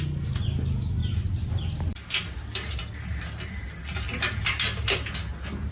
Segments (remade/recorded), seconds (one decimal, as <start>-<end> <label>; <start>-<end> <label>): 0.0-5.7 recorded